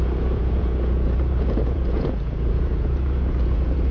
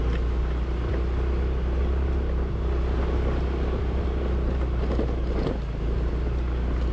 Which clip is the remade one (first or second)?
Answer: first